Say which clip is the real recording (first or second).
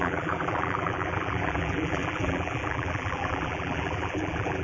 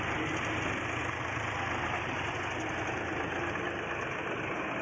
second